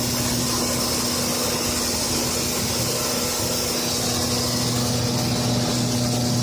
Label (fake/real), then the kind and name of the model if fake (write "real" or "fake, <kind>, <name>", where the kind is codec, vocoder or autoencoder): real